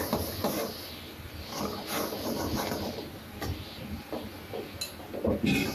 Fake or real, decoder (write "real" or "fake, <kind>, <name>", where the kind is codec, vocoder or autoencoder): real